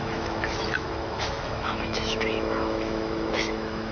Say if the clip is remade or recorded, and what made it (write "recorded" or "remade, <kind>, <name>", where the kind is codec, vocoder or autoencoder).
remade, autoencoder, DAC-VAE